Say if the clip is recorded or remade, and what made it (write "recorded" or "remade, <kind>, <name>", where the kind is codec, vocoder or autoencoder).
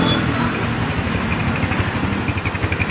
recorded